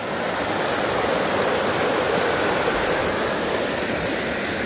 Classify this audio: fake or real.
real